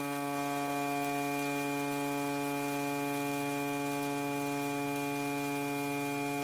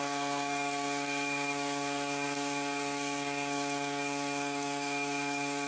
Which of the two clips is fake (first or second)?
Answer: second